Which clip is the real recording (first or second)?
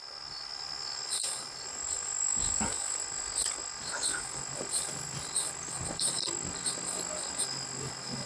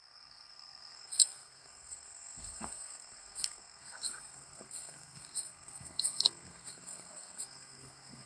first